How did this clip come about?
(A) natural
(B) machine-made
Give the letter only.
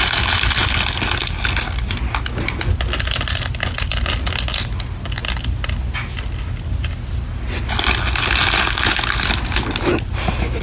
A